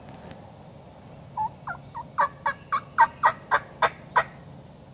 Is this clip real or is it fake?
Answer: real